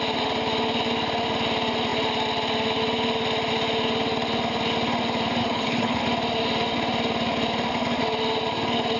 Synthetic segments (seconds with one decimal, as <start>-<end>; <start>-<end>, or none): 5.4-6.0